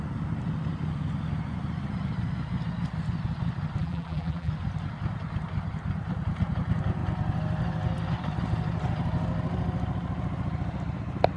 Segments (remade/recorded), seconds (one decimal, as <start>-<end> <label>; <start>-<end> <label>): 0.0-3.8 recorded; 3.8-4.5 remade; 4.5-11.4 recorded